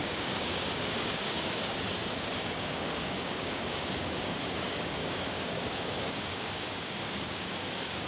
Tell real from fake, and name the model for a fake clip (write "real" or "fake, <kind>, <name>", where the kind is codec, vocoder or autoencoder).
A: fake, codec, DAC